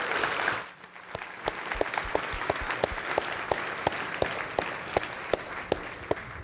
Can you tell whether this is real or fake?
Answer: real